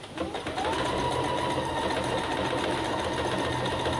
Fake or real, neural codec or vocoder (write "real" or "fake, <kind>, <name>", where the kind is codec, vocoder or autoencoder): real